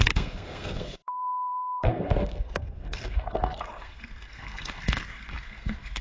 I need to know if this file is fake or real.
fake